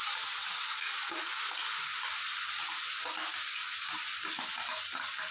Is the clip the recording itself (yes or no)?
yes